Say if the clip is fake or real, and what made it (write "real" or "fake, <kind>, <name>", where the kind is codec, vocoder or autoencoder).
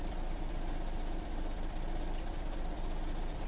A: fake, vocoder, BigVGAN v2